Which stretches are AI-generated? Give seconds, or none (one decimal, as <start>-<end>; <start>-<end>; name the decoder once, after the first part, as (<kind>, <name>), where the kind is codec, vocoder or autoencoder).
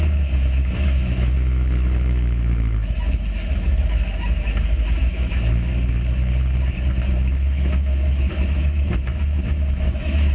0.0-5.7 (autoencoder, DAC-VAE); 7.0-10.3